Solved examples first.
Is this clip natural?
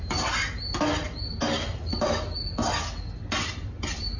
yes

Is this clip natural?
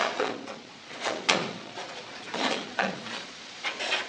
no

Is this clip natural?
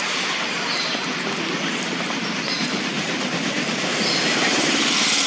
yes